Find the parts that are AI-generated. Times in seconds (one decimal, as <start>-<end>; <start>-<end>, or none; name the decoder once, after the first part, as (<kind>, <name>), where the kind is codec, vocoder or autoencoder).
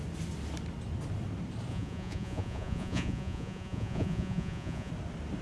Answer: 1.7-4.9 (vocoder, Vocos)